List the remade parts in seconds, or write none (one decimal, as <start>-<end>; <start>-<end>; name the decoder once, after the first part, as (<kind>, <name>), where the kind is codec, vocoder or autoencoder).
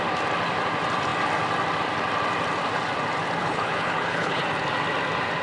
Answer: 3.4-4.4 (codec, HILCodec)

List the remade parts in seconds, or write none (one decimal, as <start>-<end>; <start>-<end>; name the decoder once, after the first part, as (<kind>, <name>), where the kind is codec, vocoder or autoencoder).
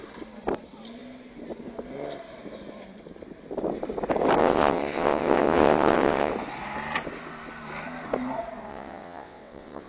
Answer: 4.4-6.3 (vocoder, WaveNeXt); 8.7-9.9